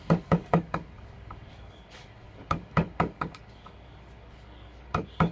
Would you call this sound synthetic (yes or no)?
yes